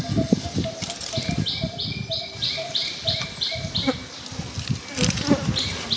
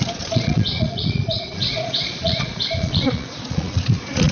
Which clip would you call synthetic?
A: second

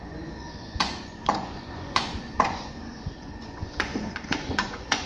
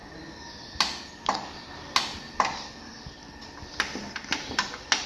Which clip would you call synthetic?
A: first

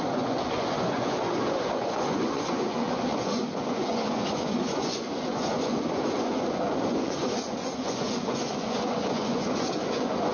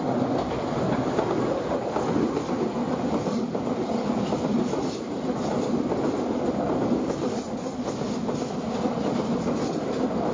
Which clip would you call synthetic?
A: first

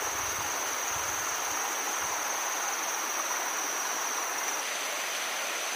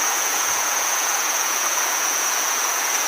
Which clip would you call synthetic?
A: second